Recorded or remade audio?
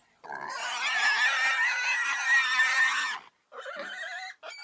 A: recorded